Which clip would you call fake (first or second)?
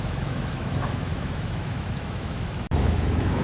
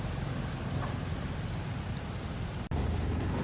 first